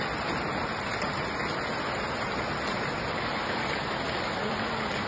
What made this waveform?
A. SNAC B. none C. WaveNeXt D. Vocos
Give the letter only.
B